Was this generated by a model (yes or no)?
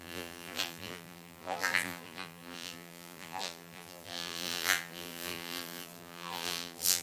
yes